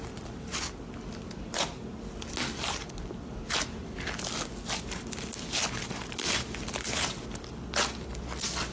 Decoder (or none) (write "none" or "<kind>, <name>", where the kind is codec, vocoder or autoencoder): none